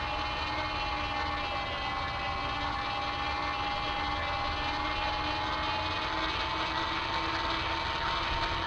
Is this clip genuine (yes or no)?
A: yes